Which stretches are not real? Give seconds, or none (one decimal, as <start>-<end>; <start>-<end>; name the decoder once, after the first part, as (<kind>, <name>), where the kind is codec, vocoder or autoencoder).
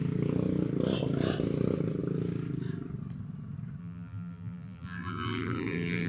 3.8-6.1 (vocoder, BigVGAN v2)